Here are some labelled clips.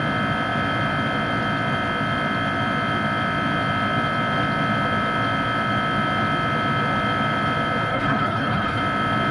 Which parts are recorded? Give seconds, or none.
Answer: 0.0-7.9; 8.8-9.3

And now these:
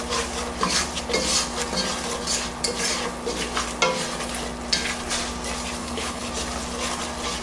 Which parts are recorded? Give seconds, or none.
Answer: 0.0-5.8; 6.3-7.4

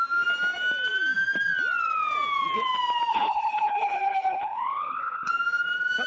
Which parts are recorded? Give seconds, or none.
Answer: 0.0-3.1; 5.3-6.1

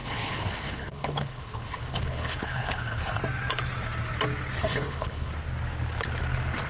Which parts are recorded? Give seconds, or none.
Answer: 3.2-4.6; 5.3-6.7

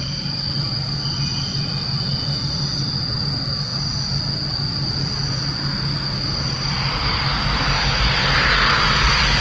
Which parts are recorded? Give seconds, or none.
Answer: 0.0-9.4

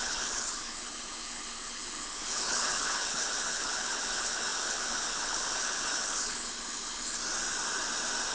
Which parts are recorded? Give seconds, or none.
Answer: 7.2-8.3

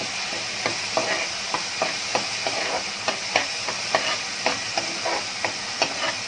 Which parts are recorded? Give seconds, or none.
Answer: 0.0-6.3